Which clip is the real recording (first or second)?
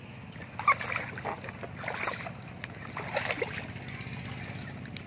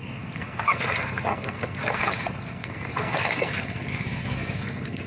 first